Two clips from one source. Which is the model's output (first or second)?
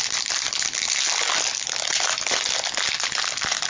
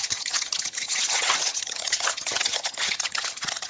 second